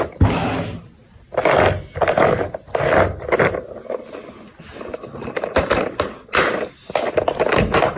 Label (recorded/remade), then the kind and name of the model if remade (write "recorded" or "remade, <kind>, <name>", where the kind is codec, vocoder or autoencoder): recorded